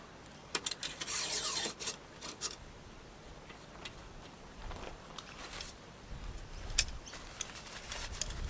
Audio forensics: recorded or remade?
remade